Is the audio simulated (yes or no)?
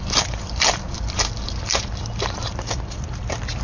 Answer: yes